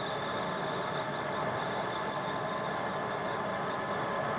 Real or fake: real